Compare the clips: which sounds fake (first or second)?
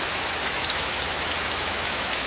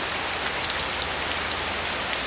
first